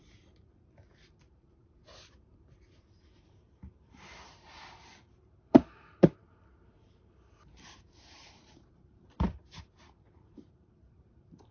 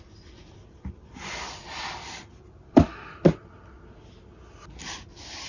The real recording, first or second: second